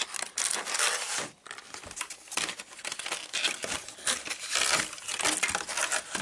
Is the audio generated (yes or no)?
no